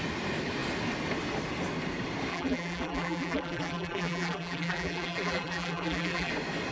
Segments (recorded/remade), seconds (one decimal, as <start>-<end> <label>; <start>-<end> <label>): 0.0-2.3 recorded; 2.3-6.3 remade; 6.3-6.7 recorded